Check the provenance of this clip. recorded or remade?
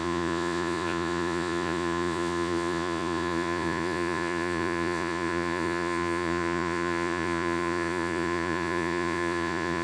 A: remade